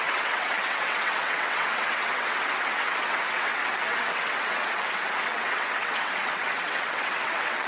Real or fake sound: fake